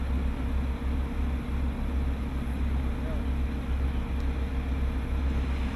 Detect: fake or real real